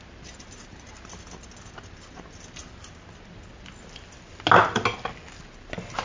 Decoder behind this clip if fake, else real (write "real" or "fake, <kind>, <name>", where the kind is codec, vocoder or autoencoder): real